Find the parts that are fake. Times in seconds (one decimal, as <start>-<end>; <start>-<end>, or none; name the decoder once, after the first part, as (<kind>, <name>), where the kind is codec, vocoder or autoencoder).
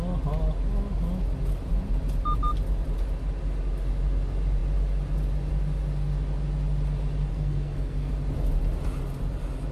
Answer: 7.3-8.1 (codec, SNAC)